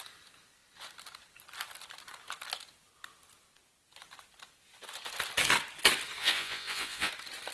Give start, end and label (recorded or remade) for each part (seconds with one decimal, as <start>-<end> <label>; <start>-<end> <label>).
0.0-6.2 recorded; 6.2-7.1 remade; 7.1-7.5 recorded

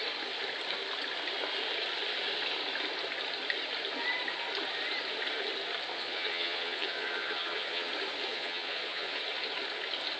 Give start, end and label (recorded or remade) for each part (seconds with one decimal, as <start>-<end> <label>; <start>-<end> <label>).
0.0-5.9 recorded; 5.9-7.9 remade; 7.9-8.3 recorded; 8.3-9.2 remade; 9.2-10.2 recorded

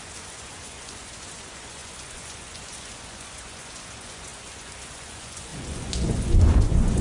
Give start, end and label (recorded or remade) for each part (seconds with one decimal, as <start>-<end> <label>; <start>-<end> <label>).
0.0-7.0 remade

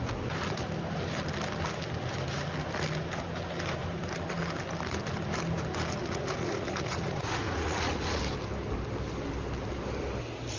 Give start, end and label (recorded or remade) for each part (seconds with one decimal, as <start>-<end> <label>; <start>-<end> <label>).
0.0-6.0 recorded; 6.0-8.2 remade; 8.2-10.6 recorded